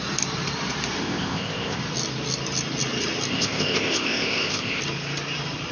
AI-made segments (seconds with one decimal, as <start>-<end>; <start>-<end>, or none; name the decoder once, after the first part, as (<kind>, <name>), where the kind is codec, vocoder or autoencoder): 1.0-1.8 (codec, ZipCodec); 3.3-4.8